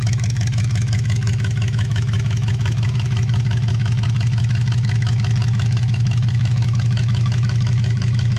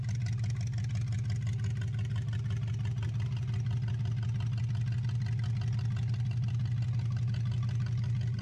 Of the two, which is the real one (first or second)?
second